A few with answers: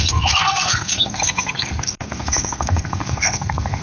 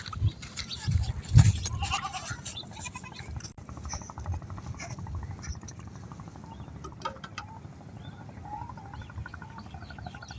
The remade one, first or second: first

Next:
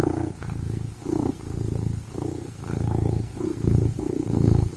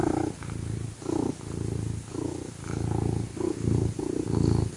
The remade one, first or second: first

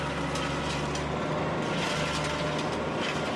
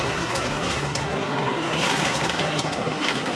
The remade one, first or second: second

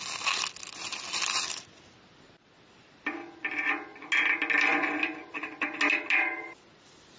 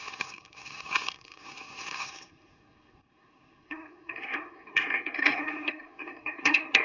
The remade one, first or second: second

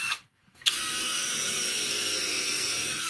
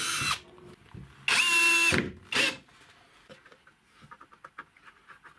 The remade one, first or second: first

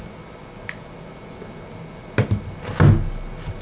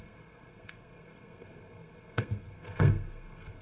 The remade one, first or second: second